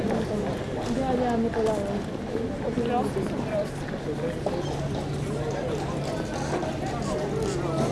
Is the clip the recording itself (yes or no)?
yes